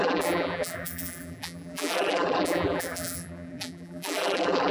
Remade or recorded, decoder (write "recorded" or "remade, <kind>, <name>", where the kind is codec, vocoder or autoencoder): remade, vocoder, BigVGAN v2